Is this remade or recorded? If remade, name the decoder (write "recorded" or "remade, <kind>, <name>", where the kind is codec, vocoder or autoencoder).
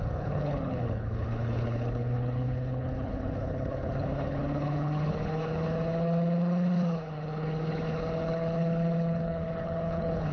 remade, codec, HILCodec